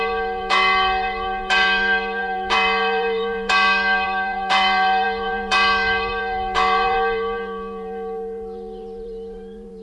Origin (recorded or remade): remade